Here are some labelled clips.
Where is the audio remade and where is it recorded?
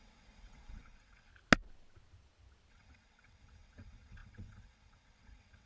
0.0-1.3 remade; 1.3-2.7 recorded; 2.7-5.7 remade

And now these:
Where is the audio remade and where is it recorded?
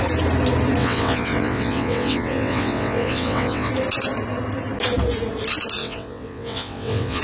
0.0-0.8 recorded; 0.8-3.7 remade; 3.7-5.8 recorded; 5.8-7.2 remade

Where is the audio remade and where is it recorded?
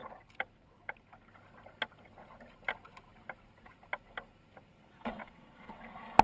0.0-4.7 recorded; 4.7-5.8 remade; 5.8-6.2 recorded